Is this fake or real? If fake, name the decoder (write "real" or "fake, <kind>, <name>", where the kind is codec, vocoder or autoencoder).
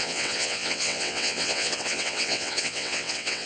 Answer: fake, vocoder, WaveNeXt